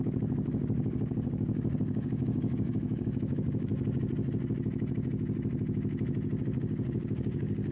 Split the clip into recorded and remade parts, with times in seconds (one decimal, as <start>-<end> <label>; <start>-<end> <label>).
0.0-3.7 remade; 3.7-6.4 recorded; 6.4-7.7 remade